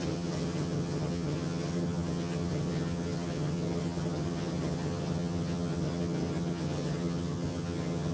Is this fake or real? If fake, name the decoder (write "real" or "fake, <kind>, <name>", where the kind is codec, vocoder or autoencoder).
fake, vocoder, HiFi-GAN